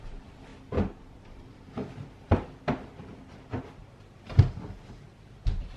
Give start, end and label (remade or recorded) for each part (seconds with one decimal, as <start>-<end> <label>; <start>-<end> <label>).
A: 0.0-5.8 recorded